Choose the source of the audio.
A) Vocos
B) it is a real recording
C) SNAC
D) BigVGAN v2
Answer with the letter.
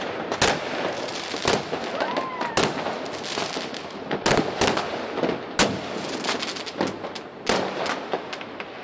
B